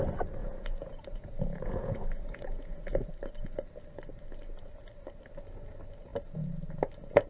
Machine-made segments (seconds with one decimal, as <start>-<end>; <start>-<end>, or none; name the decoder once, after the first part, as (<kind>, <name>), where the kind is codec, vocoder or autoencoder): 0.4-3.1 (vocoder, Vocos)